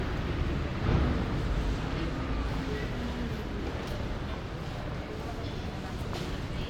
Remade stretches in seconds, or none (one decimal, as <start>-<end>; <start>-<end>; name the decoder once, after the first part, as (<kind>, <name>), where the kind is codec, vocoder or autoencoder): none